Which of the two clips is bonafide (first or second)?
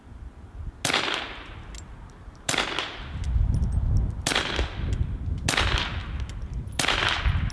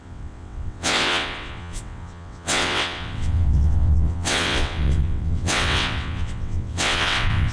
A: first